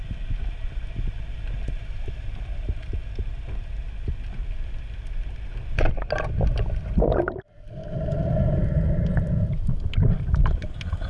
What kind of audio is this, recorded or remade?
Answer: recorded